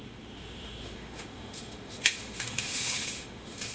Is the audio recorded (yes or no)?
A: no